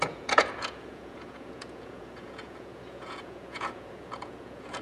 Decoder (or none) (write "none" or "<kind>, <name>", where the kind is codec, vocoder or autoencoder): vocoder, Vocos